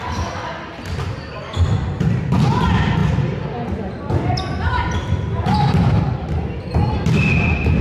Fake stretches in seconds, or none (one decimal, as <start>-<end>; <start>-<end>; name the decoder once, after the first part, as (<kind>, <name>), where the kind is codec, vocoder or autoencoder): none